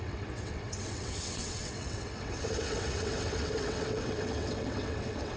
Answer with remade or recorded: remade